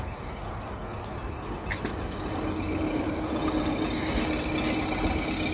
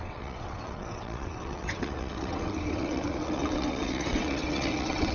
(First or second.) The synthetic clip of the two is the second